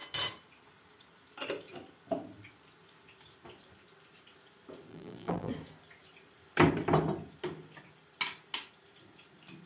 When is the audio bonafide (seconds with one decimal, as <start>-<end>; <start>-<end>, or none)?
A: 0.0-4.9; 5.5-9.7